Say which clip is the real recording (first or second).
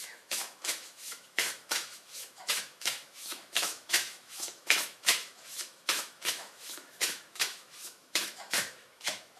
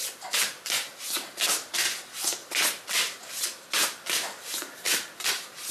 second